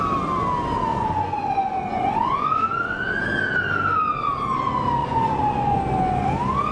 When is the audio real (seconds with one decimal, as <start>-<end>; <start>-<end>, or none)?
0.0-0.9; 3.2-5.0; 5.8-6.7